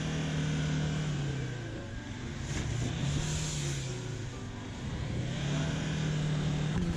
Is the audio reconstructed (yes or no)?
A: no